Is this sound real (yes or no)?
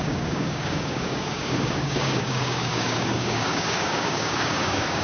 no